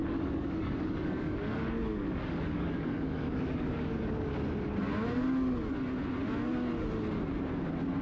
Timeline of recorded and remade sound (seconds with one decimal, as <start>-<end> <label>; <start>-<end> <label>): 0.0-4.3 remade; 4.3-8.0 recorded